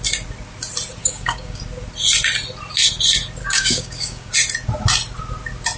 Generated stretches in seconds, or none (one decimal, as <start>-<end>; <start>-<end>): 1.0-1.6; 3.4-4.3